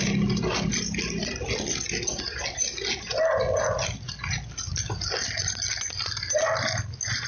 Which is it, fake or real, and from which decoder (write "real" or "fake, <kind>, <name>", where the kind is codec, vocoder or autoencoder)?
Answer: real